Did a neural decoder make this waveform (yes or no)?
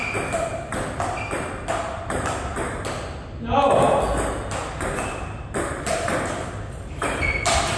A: no